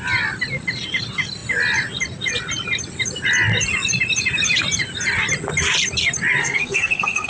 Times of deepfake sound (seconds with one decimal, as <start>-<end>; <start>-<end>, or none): 6.4-7.3